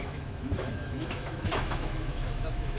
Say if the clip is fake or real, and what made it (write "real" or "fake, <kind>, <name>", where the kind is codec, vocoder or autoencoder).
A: fake, autoencoder, DAC-VAE